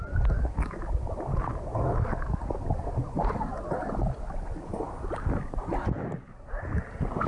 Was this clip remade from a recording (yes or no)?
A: no